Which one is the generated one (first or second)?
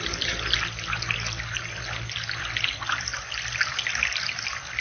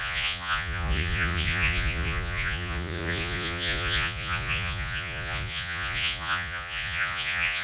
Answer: second